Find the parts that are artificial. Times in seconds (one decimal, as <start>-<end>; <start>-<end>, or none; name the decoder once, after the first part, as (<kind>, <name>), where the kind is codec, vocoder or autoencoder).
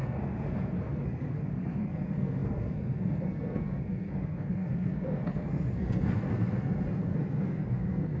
0.0-8.2 (codec, SNAC)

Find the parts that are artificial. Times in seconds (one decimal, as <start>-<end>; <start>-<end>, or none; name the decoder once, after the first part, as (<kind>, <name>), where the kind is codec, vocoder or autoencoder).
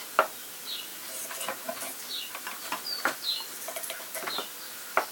0.9-4.0 (vocoder, BigVGAN v2)